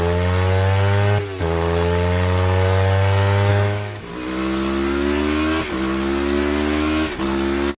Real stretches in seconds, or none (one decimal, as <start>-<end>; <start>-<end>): 0.0-3.5; 4.1-7.8